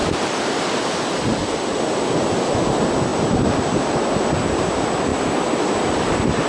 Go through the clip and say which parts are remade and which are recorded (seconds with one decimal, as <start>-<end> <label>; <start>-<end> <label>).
0.0-1.4 remade; 1.4-3.1 recorded; 3.1-4.1 remade; 4.1-5.1 recorded; 5.1-6.5 remade